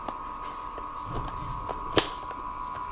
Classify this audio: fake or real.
real